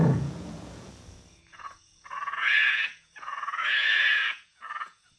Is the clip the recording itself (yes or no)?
no